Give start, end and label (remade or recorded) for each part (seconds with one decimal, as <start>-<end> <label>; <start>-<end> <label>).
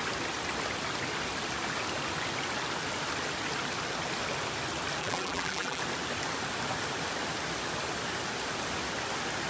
0.0-5.0 recorded; 5.0-5.8 remade; 5.8-9.5 recorded